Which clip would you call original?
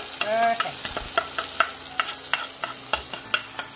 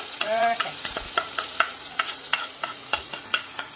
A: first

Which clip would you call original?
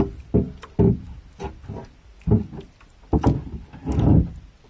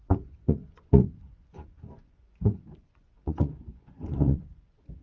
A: first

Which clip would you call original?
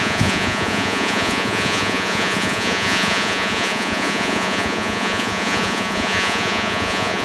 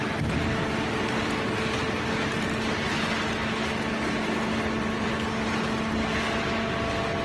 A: second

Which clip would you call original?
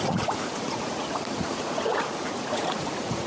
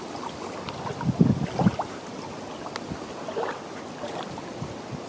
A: second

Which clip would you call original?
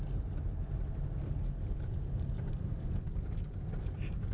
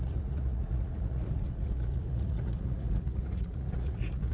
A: first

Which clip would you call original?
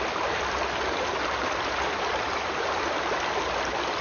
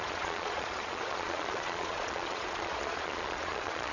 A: first